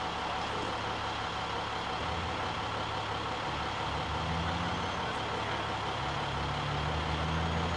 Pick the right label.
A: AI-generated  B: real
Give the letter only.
B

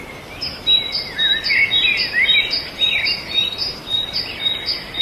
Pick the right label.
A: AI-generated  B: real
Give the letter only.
B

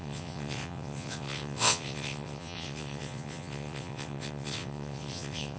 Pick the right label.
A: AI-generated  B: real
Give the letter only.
A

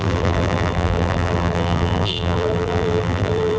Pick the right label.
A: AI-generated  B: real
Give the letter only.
A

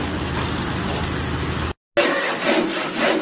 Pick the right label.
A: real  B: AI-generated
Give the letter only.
A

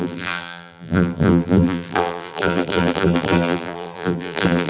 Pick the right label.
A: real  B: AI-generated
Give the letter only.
B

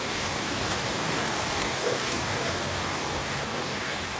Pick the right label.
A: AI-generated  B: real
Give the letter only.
A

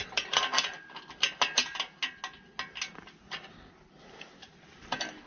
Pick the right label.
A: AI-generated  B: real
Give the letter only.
B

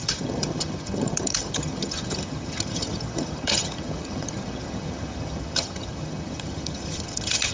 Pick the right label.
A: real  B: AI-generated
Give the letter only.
B